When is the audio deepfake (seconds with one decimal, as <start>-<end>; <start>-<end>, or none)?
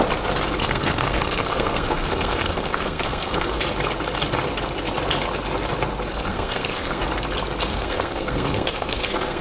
0.6-3.6; 6.1-7.0; 7.7-9.4